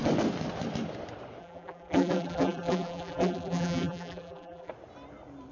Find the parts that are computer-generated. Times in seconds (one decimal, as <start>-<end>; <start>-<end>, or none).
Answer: 1.4-4.7